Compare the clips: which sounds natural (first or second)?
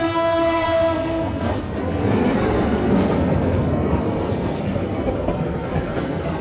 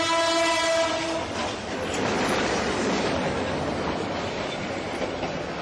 second